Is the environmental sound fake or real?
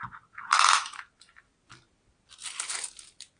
real